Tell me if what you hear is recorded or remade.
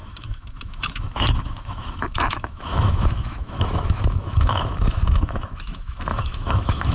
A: remade